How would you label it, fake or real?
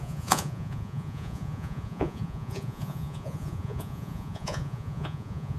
fake